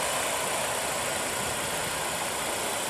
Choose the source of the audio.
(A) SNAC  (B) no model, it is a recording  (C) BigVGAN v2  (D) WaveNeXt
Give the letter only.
B